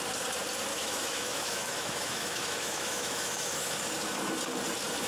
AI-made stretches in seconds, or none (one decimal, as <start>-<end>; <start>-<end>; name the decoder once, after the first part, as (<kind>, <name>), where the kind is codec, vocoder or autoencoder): 0.7-3.8 (autoencoder, DAC-VAE)